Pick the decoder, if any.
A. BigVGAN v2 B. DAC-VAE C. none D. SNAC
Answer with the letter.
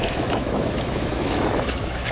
B